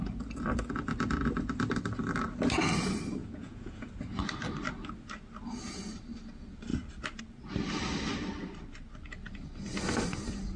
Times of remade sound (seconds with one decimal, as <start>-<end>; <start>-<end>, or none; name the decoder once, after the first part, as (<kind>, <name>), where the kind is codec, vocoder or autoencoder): 3.2-3.9 (vocoder, Vocos)